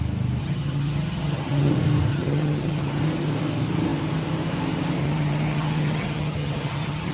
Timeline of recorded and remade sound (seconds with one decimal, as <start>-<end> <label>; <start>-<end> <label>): 0.0-0.4 recorded; 0.4-1.7 remade; 1.7-2.1 recorded; 2.1-3.0 remade; 3.0-5.0 recorded; 5.0-7.1 remade